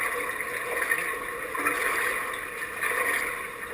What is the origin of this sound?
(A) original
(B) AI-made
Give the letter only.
A